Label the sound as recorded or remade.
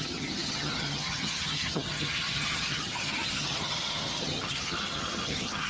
remade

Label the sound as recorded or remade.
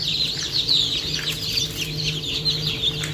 recorded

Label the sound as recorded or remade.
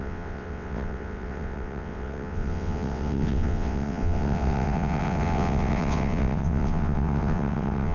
remade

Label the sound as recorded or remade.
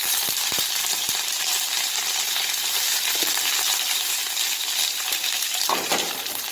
remade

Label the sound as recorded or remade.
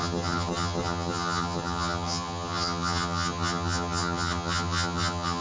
remade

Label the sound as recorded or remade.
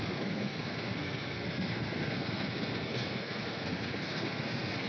remade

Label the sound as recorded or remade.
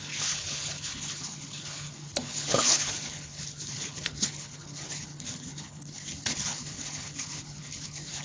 remade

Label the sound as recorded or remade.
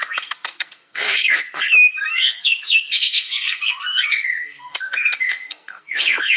remade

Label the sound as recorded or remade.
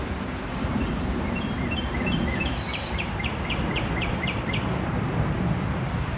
remade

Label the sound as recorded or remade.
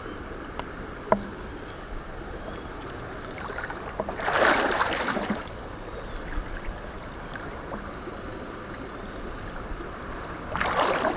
recorded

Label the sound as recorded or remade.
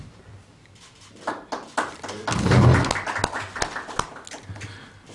recorded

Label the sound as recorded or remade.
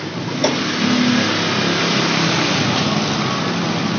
recorded